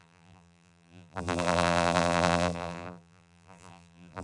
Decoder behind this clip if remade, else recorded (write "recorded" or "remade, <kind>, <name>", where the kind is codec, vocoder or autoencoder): remade, vocoder, BigVGAN v2